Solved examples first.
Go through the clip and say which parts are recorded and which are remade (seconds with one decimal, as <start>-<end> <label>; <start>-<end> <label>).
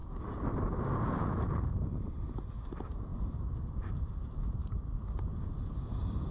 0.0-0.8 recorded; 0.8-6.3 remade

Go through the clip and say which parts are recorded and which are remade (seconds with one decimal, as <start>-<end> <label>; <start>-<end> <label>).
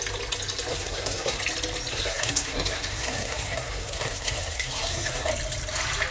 0.0-0.7 recorded; 0.7-1.4 remade; 1.4-1.9 recorded; 1.9-5.3 remade; 5.3-6.1 recorded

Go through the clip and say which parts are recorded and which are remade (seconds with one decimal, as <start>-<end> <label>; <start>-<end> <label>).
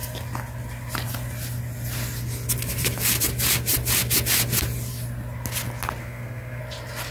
0.0-6.0 recorded; 6.0-6.6 remade; 6.6-7.1 recorded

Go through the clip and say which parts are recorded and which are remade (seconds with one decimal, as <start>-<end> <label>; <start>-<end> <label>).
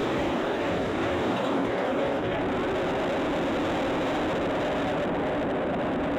0.0-2.4 remade; 2.4-6.2 recorded